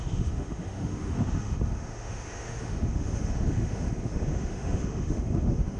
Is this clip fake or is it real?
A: fake